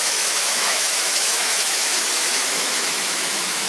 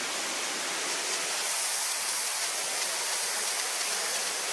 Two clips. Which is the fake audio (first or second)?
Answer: first